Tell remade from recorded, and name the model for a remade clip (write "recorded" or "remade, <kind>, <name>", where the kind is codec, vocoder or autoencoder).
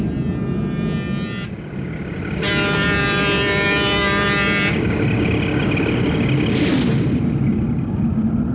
recorded